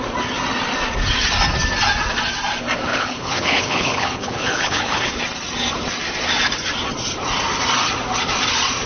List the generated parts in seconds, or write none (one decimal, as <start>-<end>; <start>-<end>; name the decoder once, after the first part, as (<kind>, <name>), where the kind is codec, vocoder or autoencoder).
2.9-5.2 (codec, HILCodec)